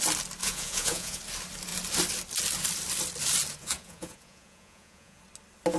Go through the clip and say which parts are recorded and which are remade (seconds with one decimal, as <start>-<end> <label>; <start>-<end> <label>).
0.0-0.4 recorded; 0.4-1.2 remade; 1.2-3.6 recorded; 3.6-5.2 remade; 5.2-5.8 recorded